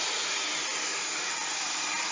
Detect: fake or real real